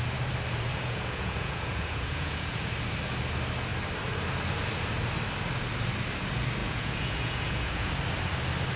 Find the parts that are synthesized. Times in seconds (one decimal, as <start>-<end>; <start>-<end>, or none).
0.7-2.6; 6.6-7.9